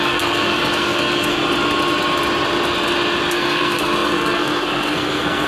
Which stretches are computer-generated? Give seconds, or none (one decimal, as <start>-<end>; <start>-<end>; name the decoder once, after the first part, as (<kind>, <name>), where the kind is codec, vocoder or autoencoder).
0.0-1.4 (codec, SNAC); 3.3-5.5